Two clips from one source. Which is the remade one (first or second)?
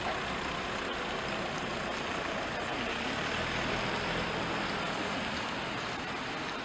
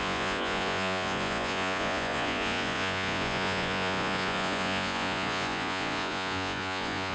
second